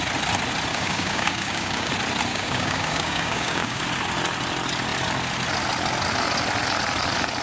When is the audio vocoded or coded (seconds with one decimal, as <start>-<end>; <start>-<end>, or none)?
0.7-1.9; 2.3-3.8